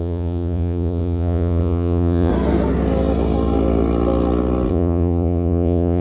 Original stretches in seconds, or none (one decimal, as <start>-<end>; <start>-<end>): 2.3-4.7